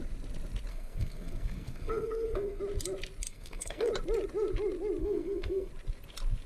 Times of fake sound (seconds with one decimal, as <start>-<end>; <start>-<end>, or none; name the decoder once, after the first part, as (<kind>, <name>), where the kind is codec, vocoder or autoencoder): 0.7-2.6 (codec, SNAC); 3.3-3.9; 5.0-5.7